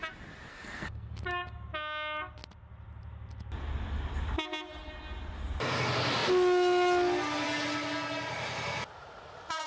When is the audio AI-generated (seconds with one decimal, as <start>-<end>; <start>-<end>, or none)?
0.5-1.1